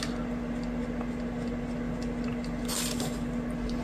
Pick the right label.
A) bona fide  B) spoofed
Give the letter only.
A